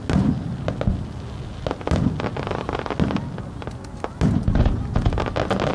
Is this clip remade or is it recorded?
recorded